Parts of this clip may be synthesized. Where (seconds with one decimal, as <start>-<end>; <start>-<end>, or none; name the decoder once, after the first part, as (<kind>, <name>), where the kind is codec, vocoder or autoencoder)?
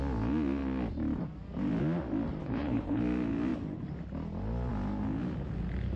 2.4-3.0 (codec, HILCodec)